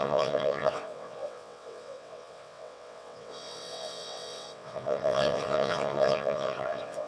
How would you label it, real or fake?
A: fake